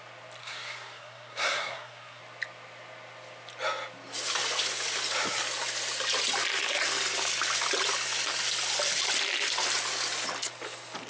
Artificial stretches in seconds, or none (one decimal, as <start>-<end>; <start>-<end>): 0.4-2.2